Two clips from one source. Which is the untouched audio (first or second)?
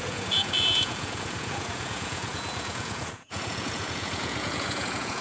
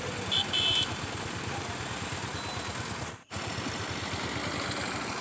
second